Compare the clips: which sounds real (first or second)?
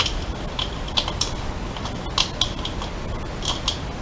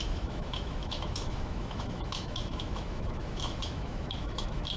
first